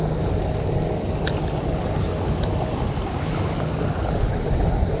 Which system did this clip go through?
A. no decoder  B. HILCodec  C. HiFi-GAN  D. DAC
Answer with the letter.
A